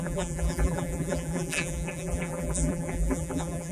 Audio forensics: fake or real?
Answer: fake